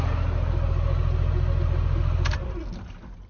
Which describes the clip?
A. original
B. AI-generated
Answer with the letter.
A